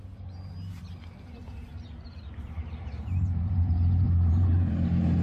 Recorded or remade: remade